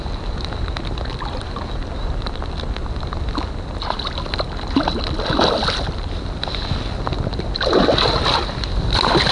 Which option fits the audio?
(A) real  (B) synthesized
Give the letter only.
A